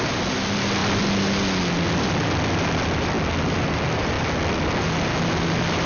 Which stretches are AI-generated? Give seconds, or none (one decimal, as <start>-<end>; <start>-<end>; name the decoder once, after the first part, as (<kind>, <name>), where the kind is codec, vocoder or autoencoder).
none